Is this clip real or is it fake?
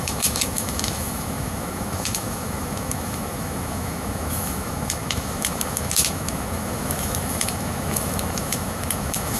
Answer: fake